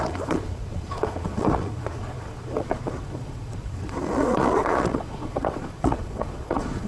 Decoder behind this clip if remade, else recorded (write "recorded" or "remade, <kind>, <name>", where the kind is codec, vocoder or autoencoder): remade, vocoder, Vocos